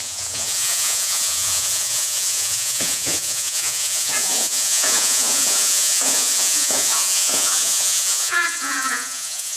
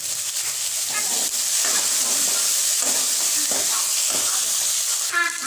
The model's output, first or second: first